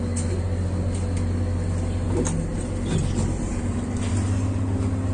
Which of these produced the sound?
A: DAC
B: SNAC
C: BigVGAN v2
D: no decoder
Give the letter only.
D